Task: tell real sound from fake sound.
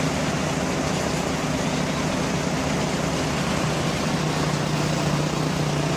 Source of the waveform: real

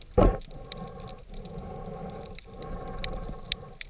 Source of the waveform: real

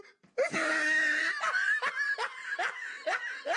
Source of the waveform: real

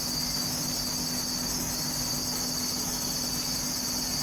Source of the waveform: real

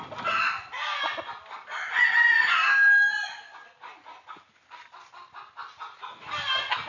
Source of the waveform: real